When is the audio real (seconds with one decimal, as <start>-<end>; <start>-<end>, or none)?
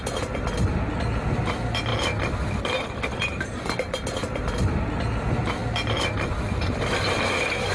0.0-7.7